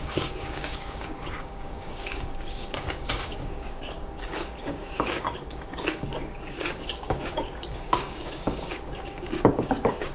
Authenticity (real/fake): fake